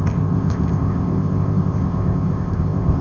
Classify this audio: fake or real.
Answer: fake